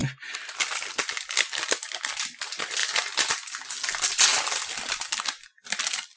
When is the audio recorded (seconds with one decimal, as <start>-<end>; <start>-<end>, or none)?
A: 0.0-6.2